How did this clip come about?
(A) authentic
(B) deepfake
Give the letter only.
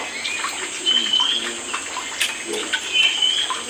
A